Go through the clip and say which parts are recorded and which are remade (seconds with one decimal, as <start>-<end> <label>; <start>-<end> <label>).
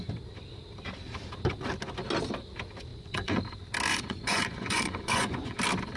0.0-2.9 recorded; 2.9-3.4 remade; 3.4-3.9 recorded; 3.9-5.6 remade; 5.6-6.0 recorded